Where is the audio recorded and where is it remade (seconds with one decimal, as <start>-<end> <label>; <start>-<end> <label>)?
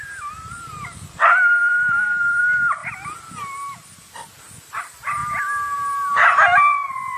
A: 0.0-1.6 recorded; 1.6-2.4 remade; 2.4-7.2 recorded